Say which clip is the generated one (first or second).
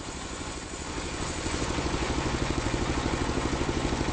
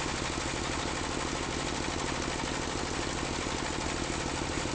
first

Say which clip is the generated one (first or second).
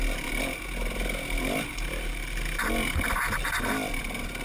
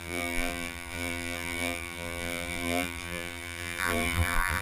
second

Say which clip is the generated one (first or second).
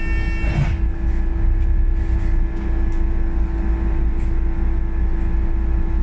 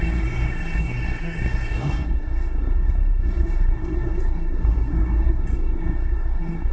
second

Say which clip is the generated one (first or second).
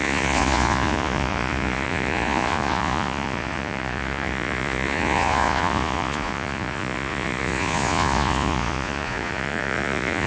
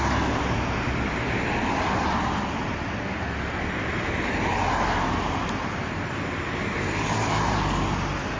first